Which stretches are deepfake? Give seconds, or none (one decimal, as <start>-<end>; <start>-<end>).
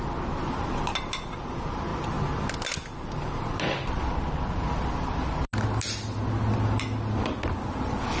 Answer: none